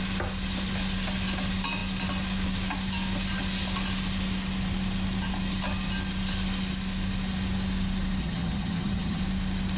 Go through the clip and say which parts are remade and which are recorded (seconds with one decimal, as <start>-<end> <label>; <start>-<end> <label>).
0.0-8.2 recorded; 8.2-9.2 remade; 9.2-9.8 recorded

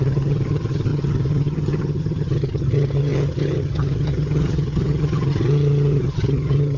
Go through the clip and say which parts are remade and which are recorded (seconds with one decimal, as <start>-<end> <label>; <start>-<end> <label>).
0.0-6.8 remade